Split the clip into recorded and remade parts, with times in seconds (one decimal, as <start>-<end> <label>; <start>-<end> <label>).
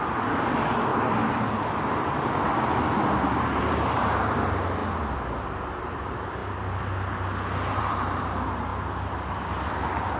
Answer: 0.0-0.9 remade; 0.9-2.4 recorded; 2.4-4.8 remade; 4.8-5.8 recorded; 5.8-6.4 remade; 6.4-7.8 recorded; 7.8-8.7 remade; 8.7-10.2 recorded